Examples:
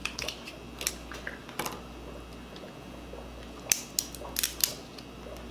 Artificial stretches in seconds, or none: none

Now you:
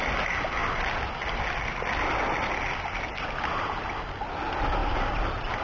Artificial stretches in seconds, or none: none

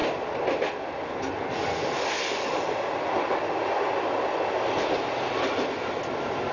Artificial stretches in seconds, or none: none

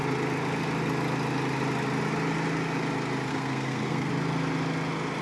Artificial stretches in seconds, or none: 3.3-4.1